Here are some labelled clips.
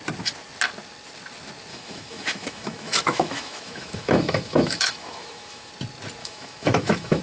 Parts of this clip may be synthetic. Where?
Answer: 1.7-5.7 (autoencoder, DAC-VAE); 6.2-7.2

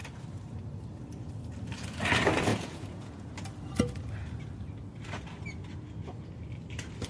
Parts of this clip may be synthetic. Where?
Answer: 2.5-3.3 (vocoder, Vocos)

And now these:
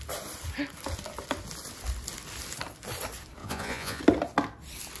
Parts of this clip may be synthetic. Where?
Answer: 3.4-4.0 (vocoder, Vocos)